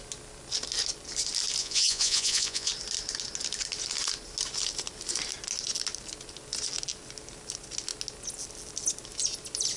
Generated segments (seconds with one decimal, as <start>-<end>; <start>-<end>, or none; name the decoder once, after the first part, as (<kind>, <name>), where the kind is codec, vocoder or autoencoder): 1.6-2.7 (vocoder, Vocos)